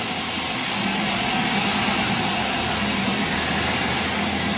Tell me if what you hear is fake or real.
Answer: real